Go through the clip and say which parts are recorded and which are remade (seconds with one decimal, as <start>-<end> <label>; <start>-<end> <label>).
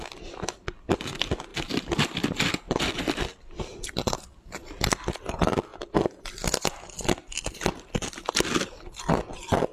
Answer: 0.0-9.7 recorded